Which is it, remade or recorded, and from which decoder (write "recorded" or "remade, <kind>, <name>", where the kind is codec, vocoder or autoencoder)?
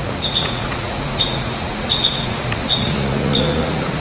remade, vocoder, Vocos